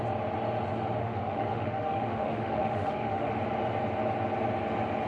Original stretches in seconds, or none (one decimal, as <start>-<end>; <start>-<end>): 0.0-1.0; 3.3-5.1